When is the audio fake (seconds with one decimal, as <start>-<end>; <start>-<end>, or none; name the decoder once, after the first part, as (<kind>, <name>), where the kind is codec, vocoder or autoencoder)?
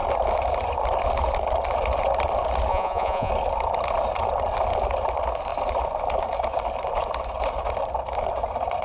2.7-3.3 (vocoder, Vocos)